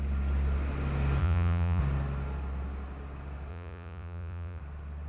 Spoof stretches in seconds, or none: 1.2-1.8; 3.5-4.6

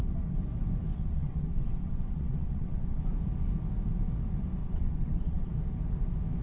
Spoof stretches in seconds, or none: 0.9-3.0; 4.6-5.5